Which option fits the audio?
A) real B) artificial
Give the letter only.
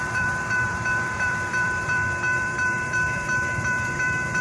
B